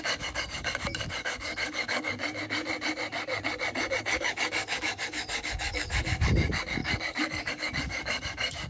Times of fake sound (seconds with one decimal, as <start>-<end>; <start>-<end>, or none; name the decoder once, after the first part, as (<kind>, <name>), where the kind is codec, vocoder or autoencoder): 0.0-2.2 (codec, DAC); 4.0-8.7